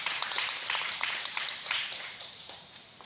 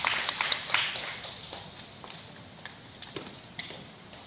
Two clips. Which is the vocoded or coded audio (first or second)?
first